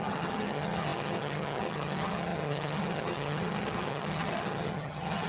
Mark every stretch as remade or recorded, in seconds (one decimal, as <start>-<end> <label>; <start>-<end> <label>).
0.0-5.3 remade